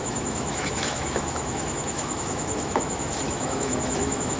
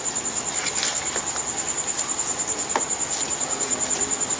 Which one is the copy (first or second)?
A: first